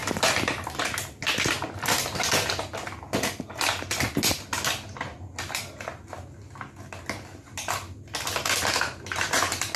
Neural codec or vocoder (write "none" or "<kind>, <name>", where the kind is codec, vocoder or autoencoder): none